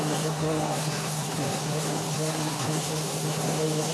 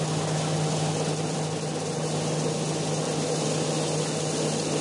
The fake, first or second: first